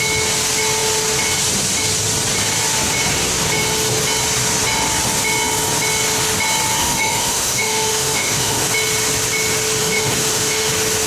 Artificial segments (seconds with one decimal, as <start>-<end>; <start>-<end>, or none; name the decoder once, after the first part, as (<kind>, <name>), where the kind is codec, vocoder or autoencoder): 6.8-8.7 (autoencoder, DAC-VAE); 9.8-10.7